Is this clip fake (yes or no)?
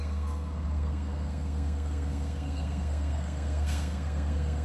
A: yes